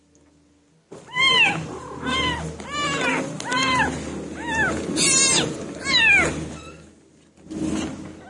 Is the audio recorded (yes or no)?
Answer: yes